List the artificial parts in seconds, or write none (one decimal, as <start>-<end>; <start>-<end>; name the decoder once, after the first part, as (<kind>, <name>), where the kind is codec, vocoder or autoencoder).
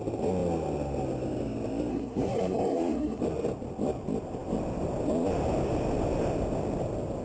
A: 1.9-3.2 (codec, SNAC)